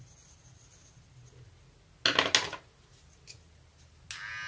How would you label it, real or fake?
real